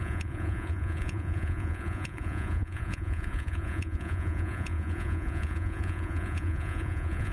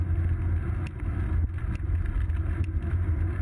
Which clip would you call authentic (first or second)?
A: second